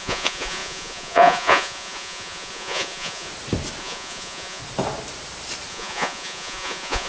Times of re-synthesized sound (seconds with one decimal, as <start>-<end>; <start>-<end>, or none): 0.0-3.3; 3.8-4.6; 5.7-7.1